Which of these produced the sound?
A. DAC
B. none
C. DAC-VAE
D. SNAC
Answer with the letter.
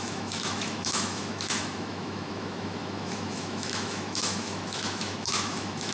C